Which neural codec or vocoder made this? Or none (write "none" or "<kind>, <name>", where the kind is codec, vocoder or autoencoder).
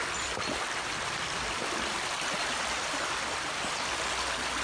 none